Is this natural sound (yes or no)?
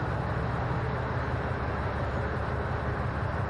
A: yes